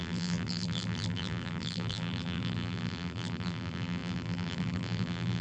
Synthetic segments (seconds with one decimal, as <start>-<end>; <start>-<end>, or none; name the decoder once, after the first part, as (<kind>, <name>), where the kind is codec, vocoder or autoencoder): 0.0-5.4 (vocoder, BigVGAN v2)

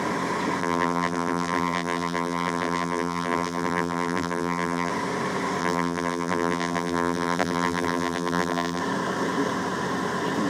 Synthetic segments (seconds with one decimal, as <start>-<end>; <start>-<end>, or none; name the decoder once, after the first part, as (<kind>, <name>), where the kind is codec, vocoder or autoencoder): 0.6-4.9 (vocoder, BigVGAN v2); 5.6-8.8

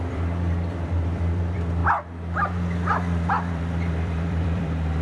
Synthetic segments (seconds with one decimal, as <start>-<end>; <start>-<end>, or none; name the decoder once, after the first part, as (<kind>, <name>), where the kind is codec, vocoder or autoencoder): 0.0-1.8 (vocoder, BigVGAN v2); 3.3-5.0

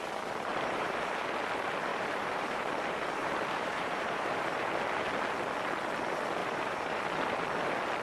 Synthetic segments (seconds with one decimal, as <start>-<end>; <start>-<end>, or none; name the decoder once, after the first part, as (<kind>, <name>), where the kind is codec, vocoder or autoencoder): 0.5-1.1 (vocoder, BigVGAN v2); 1.9-4.7; 6.4-7.0

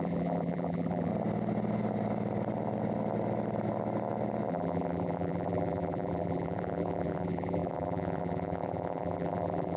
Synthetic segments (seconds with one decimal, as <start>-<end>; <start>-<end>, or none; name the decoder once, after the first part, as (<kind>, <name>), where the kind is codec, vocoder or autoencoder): 0.0-1.1 (vocoder, BigVGAN v2); 4.5-9.8

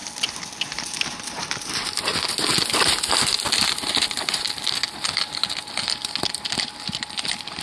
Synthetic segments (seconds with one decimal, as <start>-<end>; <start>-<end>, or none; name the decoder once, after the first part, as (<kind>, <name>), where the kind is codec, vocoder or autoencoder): 1.4-2.1 (vocoder, BigVGAN v2); 6.3-7.6

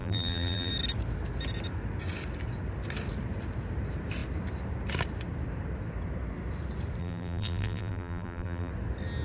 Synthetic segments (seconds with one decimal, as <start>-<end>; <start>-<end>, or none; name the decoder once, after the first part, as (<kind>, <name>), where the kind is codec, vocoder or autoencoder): 0.0-0.7 (vocoder, BigVGAN v2); 7.0-8.7

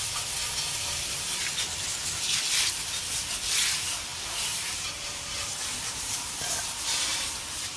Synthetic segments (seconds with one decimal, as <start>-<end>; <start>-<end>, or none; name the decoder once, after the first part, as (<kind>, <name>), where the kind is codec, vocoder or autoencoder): 4.1-6.6 (vocoder, BigVGAN v2); 7.1-7.8